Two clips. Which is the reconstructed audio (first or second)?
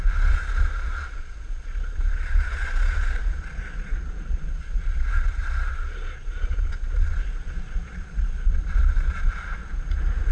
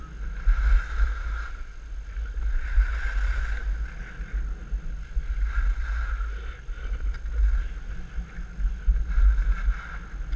first